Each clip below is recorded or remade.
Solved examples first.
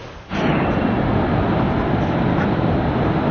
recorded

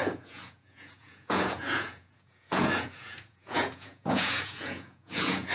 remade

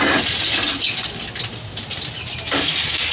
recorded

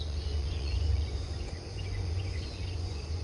remade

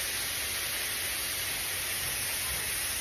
recorded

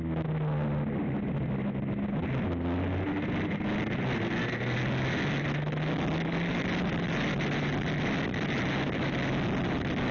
recorded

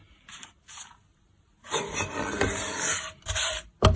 recorded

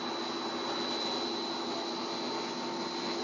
recorded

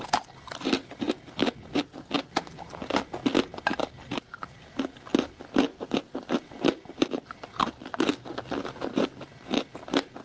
recorded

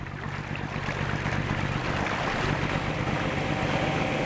recorded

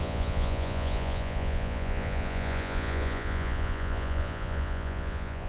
remade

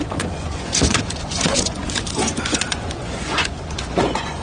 remade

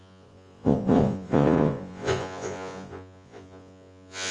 remade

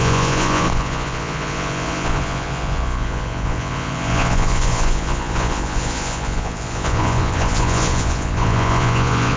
remade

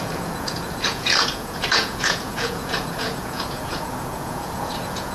remade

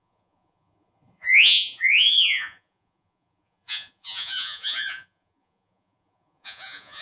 remade